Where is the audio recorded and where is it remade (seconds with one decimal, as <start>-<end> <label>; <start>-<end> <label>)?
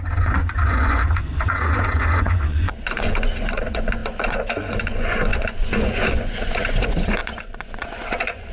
0.0-8.5 remade